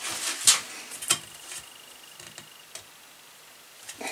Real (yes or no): yes